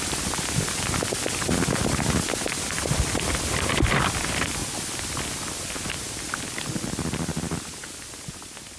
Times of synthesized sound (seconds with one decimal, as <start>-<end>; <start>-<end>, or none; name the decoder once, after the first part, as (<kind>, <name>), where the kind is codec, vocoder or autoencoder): none